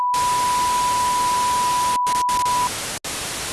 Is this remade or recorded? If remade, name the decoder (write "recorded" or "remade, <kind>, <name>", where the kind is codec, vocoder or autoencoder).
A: recorded